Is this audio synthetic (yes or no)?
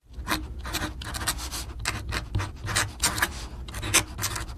no